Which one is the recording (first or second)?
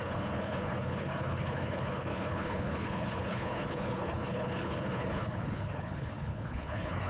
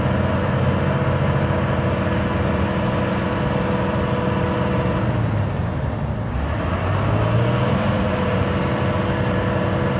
second